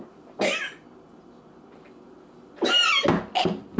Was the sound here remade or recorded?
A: recorded